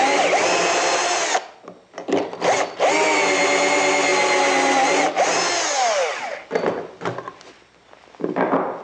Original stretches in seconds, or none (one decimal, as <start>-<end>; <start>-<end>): 0.0-8.8